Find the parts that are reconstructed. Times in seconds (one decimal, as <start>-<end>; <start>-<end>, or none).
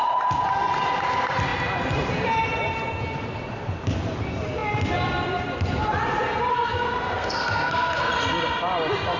6.5-8.0